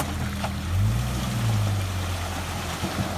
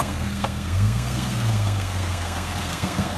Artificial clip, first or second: second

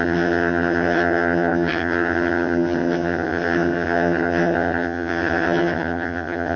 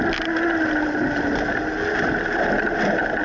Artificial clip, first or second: first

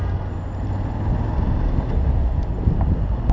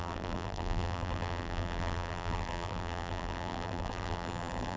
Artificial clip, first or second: second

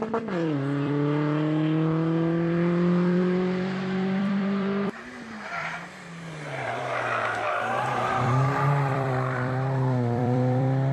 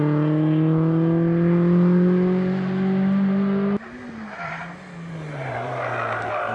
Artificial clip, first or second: first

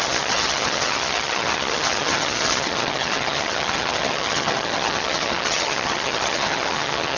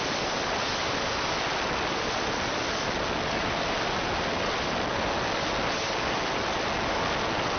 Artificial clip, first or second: first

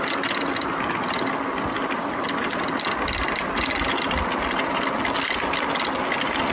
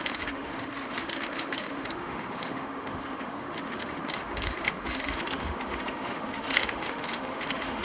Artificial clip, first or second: second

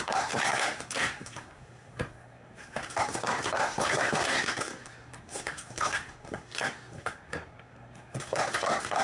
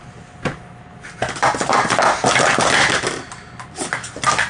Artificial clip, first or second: first